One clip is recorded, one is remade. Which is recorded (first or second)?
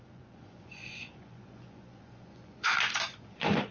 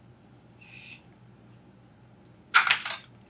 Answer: second